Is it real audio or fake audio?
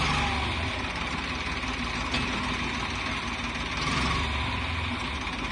real